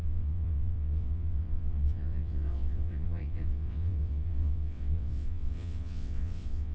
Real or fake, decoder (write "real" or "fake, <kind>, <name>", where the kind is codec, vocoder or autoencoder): fake, vocoder, WaveNeXt